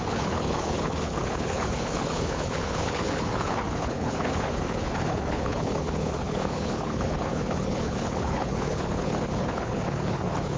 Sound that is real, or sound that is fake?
fake